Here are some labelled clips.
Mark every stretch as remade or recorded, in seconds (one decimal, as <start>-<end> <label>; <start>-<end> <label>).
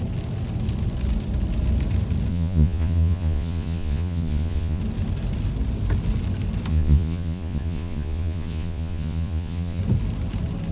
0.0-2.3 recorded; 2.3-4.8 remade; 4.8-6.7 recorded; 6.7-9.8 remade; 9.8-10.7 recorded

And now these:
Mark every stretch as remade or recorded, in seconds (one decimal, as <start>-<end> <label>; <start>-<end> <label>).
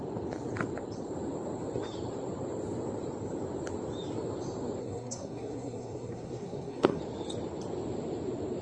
0.0-4.8 recorded; 4.8-7.0 remade; 7.0-8.6 recorded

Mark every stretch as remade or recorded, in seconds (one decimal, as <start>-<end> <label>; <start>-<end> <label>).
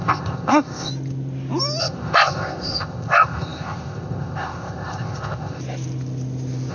0.0-0.9 remade; 0.9-1.8 recorded; 1.8-5.6 remade; 5.6-6.7 recorded